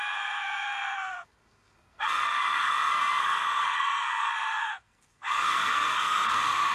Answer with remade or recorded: remade